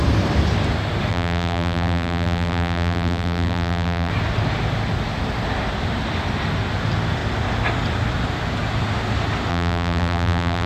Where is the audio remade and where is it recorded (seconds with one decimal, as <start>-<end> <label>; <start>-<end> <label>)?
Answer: 0.0-1.1 recorded; 1.1-4.1 remade; 4.1-9.5 recorded; 9.5-10.7 remade